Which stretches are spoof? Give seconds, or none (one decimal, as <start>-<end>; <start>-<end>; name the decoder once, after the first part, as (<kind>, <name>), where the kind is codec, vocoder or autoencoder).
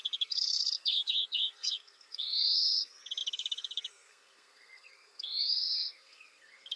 0.0-6.8 (codec, SNAC)